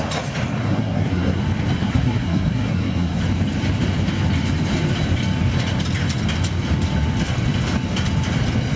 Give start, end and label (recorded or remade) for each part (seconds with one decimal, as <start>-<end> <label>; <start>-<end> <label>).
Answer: 0.0-0.6 recorded; 0.6-1.4 remade; 1.4-1.8 recorded; 1.8-3.2 remade; 3.2-8.8 recorded